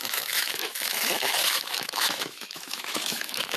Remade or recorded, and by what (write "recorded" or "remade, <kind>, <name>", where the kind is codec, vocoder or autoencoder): remade, autoencoder, DAC-VAE